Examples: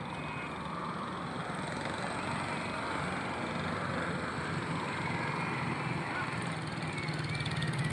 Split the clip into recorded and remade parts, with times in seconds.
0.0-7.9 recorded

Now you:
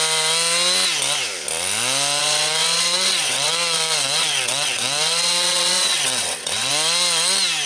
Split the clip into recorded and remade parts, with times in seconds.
0.0-2.2 recorded; 2.2-6.7 remade; 6.7-7.7 recorded

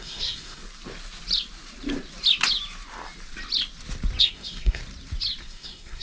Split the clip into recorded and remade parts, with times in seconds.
0.0-0.6 remade; 0.6-4.2 recorded; 4.2-4.8 remade; 4.8-5.4 recorded; 5.4-6.0 remade

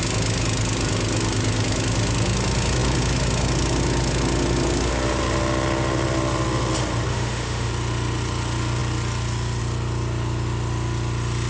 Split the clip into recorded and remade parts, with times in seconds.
0.0-7.1 recorded; 7.1-7.7 remade; 7.7-11.5 recorded

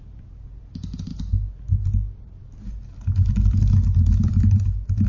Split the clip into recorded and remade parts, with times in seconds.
0.0-5.1 recorded

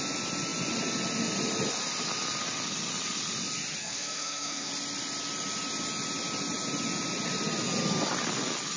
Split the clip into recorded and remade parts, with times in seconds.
0.0-3.8 recorded; 3.8-4.7 remade; 4.7-8.8 recorded

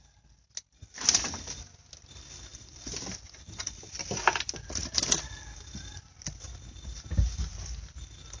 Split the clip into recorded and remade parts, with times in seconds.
0.0-2.5 recorded; 2.5-7.0 remade; 7.0-8.4 recorded